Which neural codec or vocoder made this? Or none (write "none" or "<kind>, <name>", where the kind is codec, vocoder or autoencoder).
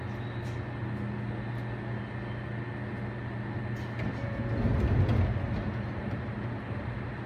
none